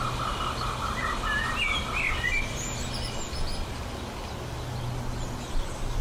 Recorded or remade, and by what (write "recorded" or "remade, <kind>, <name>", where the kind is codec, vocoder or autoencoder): recorded